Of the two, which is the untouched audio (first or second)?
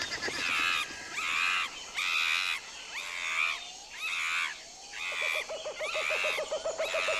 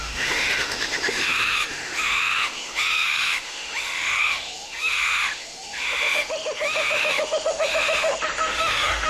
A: first